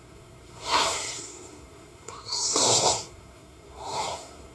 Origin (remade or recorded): remade